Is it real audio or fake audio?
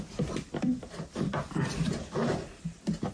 real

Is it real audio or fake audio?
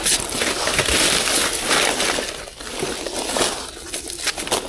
real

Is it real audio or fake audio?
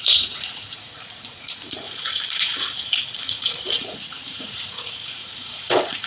fake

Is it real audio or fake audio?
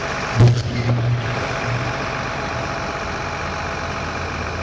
real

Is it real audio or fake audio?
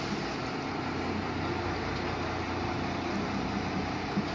real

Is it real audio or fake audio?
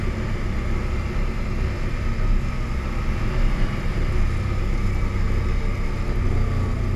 real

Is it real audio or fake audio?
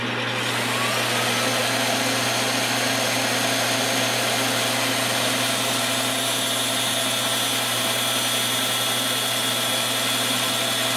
real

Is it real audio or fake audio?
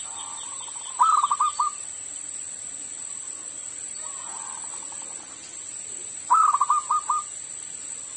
real